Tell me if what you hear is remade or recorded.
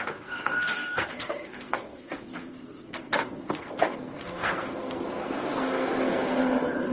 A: remade